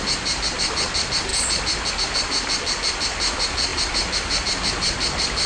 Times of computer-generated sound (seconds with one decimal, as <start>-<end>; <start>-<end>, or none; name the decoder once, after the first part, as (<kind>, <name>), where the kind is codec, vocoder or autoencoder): none